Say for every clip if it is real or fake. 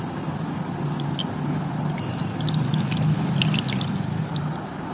real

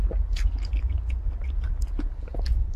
real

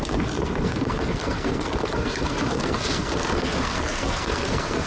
fake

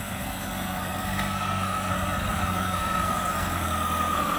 fake